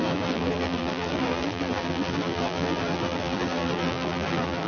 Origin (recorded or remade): remade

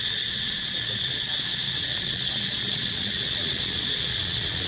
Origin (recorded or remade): remade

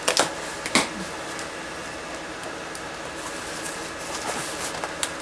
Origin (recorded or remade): recorded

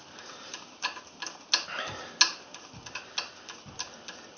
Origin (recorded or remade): recorded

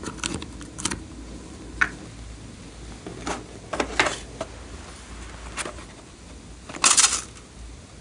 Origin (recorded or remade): recorded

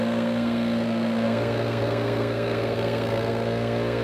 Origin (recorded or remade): remade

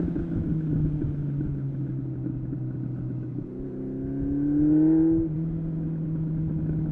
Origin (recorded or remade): recorded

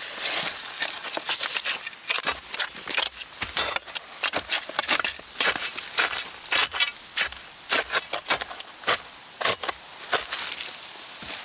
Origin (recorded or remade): recorded